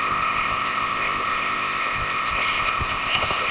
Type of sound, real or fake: fake